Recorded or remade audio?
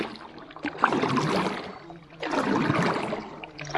recorded